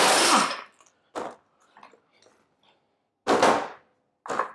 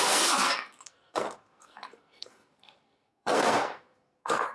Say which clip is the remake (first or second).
second